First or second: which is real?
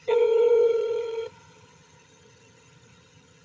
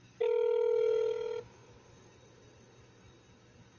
second